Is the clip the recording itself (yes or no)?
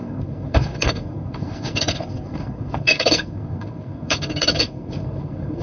no